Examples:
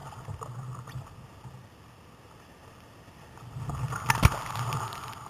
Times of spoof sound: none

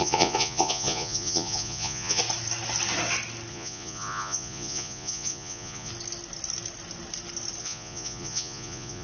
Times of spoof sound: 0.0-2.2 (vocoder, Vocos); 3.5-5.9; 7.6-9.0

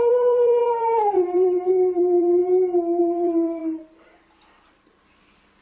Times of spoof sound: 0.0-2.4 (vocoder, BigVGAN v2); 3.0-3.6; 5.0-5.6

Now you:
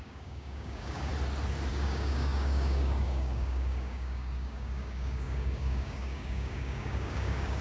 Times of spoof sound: 0.0-1.1 (codec, DAC); 1.7-7.6

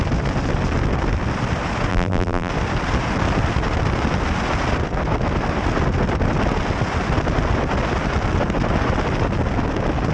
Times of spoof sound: 1.9-2.5 (vocoder, BigVGAN v2)

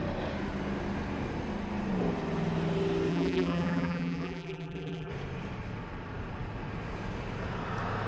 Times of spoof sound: 3.1-5.1 (vocoder, BigVGAN v2)

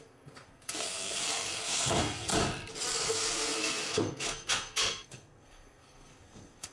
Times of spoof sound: 0.0-2.3 (codec, SNAC); 2.9-6.7